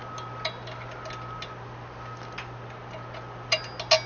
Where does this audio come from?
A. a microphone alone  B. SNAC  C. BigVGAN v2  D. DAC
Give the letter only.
A